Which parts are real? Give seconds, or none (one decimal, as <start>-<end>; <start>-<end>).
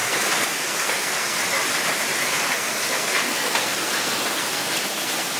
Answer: 1.4-2.2